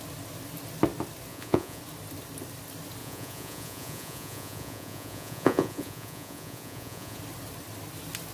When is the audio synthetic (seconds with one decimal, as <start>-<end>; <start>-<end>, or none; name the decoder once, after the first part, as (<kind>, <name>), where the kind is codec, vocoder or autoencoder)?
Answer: 1.3-1.8 (vocoder, Vocos); 3.0-7.2